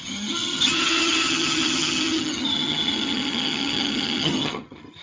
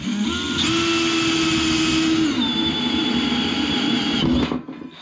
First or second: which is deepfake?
first